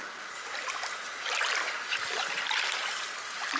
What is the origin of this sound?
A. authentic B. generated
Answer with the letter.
A